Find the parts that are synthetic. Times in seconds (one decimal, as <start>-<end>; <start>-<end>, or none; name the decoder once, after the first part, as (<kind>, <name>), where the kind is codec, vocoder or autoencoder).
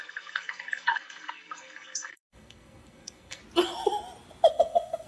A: 0.0-3.4 (codec, SNAC); 4.5-5.1